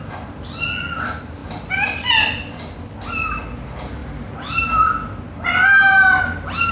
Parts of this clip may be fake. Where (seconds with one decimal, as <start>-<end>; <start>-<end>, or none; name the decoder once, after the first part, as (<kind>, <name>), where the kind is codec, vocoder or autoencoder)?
none